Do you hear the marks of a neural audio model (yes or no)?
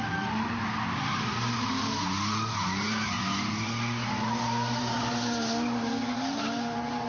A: no